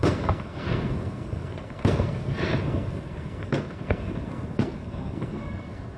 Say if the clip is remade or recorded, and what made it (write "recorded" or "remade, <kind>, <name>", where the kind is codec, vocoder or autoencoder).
remade, codec, SNAC